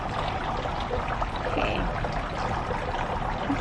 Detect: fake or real real